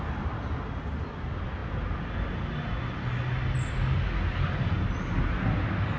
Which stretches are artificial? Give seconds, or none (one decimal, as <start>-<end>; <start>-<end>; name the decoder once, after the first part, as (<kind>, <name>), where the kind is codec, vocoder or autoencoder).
none